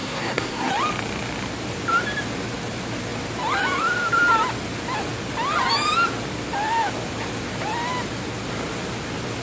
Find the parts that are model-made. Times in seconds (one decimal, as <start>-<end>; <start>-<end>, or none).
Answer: 0.0-0.7